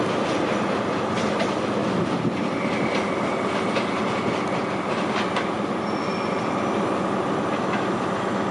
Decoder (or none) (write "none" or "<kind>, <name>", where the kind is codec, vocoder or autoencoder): none